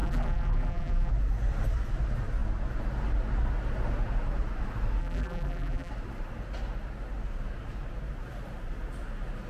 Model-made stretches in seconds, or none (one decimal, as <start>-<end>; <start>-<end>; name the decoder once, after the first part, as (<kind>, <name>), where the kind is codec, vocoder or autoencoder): 0.0-1.1 (vocoder, BigVGAN v2); 5.0-5.9